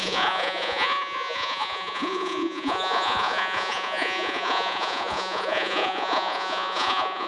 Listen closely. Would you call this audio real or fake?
fake